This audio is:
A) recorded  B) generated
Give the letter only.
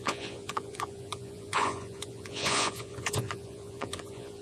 B